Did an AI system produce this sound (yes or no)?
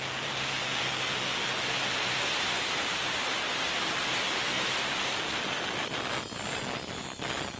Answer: no